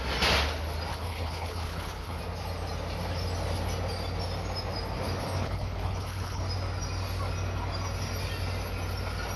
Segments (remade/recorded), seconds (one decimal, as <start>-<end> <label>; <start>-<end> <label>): 0.0-0.9 recorded; 0.9-2.2 remade; 2.2-5.4 recorded; 5.4-6.4 remade; 6.4-9.4 recorded